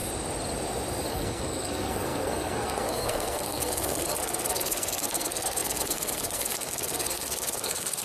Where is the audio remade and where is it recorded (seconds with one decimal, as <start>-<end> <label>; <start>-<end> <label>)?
0.0-1.1 recorded; 1.1-8.0 remade